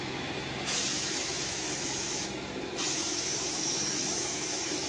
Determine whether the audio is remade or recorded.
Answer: remade